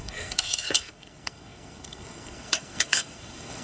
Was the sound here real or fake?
fake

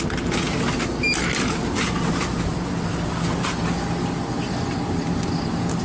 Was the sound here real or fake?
real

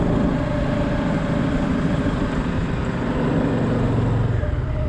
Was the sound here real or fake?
real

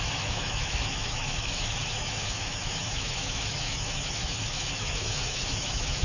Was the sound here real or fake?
fake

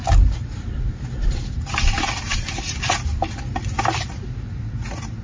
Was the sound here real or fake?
real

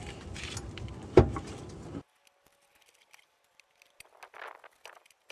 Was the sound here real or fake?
real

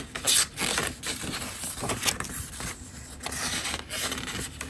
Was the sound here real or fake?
real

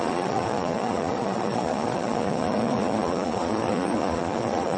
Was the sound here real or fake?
fake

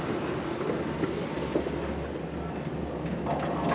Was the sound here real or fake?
real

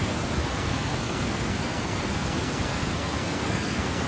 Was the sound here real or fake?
fake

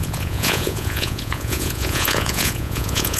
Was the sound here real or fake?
fake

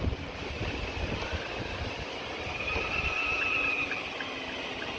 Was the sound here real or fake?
real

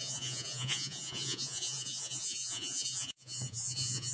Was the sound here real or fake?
fake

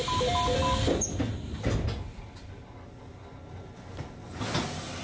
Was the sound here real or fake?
real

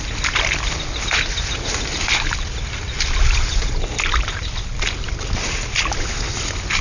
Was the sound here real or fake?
real